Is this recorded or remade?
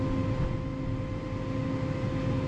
recorded